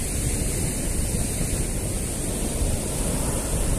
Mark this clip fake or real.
real